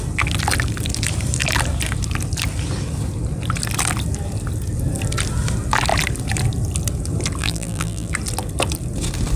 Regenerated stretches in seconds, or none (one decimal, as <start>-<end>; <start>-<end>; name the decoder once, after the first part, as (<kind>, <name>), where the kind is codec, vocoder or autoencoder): 7.4-8.1 (vocoder, BigVGAN v2)